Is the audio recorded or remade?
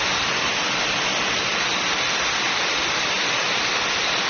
remade